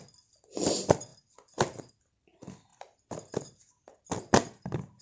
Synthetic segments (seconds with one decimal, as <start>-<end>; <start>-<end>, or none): none